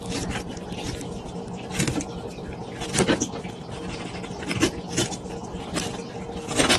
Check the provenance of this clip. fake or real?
real